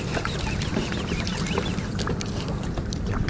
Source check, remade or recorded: recorded